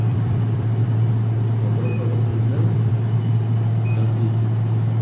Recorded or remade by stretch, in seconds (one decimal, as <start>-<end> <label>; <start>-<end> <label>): 0.0-1.1 remade; 1.1-2.3 recorded; 2.3-2.9 remade; 2.9-5.0 recorded